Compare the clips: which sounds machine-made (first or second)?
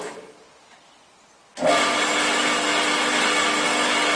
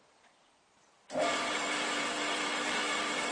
second